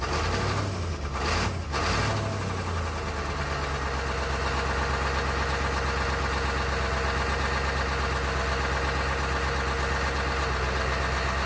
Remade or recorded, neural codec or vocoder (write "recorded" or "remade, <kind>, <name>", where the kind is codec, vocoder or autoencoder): recorded